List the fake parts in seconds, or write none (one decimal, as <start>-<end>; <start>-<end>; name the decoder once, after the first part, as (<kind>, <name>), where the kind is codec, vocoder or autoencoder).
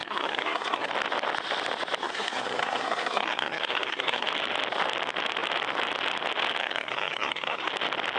0.0-0.9 (codec, SNAC); 2.0-4.3; 6.6-7.7